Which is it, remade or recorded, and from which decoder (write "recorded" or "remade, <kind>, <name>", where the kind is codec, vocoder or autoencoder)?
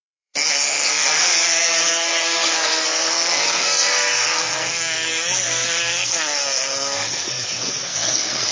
remade, codec, SNAC